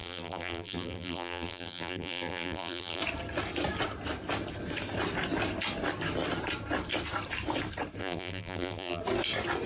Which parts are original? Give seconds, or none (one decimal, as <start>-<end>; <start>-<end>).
3.0-8.0; 9.0-9.7